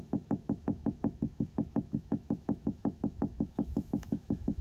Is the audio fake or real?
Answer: fake